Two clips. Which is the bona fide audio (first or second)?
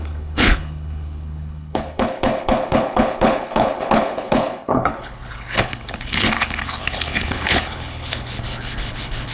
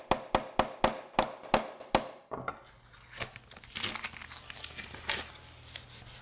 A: second